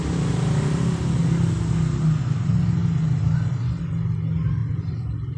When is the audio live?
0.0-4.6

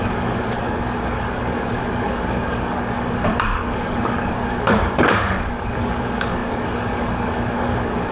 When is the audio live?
none

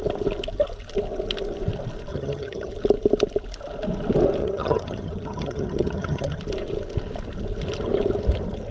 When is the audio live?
0.0-2.1; 2.7-4.4; 6.4-8.7

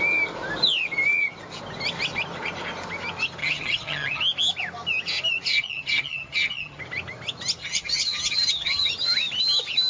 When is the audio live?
0.0-3.4; 4.2-5.5; 6.8-7.6; 8.9-9.9

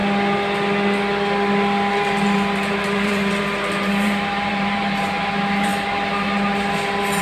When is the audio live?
0.0-1.9; 5.7-7.2

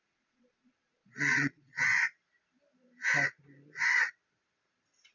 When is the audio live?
1.9-5.1

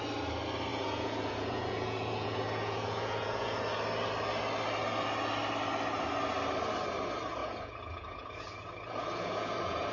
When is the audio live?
0.0-0.7; 3.6-7.4

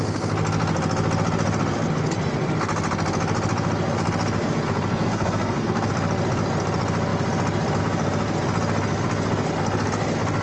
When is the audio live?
0.0-4.9; 5.9-10.4